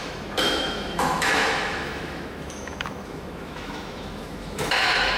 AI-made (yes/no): yes